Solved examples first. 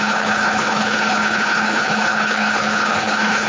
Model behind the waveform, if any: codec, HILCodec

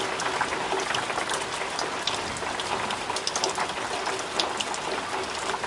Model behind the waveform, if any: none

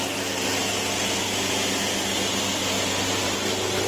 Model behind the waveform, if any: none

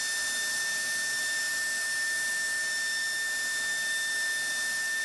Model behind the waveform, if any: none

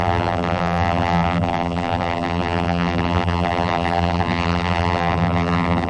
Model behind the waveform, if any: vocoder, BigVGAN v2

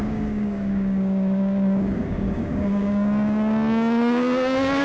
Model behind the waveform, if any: codec, DAC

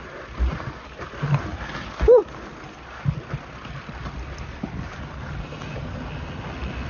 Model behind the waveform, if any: none